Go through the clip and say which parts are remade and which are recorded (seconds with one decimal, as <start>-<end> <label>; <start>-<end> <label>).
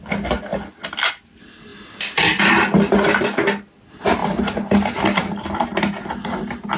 0.0-6.8 recorded